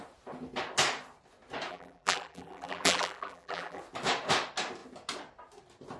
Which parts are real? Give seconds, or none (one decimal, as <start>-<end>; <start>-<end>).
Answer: 0.0-1.7; 3.8-6.0